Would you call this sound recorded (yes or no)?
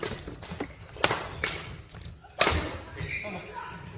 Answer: yes